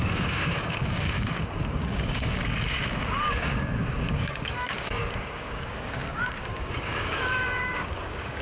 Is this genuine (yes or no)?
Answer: no